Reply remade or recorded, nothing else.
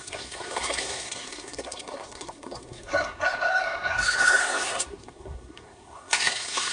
remade